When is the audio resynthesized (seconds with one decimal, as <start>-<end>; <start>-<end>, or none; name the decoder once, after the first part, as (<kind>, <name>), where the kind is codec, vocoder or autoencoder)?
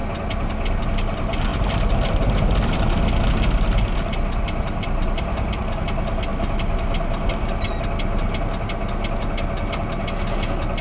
none